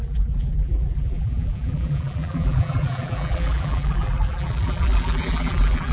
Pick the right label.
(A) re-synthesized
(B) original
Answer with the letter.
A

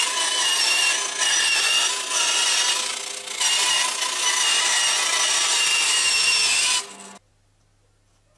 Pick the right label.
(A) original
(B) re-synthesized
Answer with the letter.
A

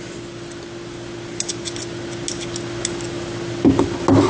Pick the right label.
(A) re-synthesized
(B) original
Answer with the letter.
B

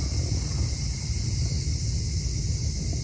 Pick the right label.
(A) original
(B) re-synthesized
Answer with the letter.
A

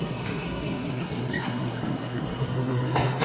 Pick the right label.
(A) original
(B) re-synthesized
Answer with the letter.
B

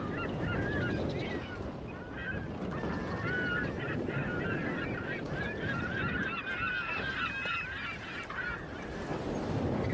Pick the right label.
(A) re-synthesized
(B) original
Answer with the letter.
B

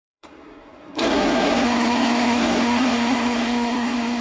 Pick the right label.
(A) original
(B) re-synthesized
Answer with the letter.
B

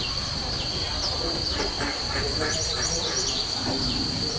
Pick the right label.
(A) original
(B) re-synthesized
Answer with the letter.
A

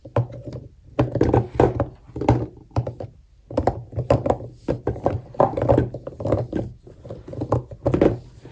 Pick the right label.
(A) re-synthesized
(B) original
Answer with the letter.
B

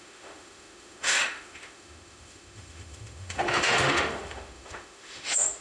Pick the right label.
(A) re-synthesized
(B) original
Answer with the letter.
A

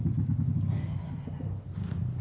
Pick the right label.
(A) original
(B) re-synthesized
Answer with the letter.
A